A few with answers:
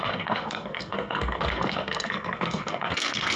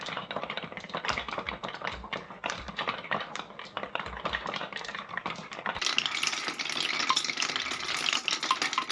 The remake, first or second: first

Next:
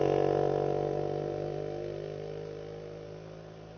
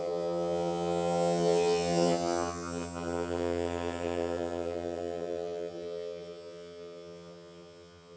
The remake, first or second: second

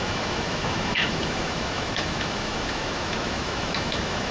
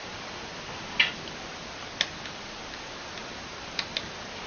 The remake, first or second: first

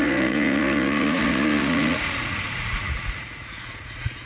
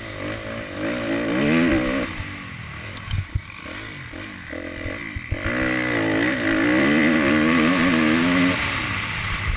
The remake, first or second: first